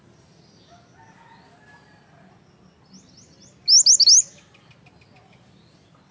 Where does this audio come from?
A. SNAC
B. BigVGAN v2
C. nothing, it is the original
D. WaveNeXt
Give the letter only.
C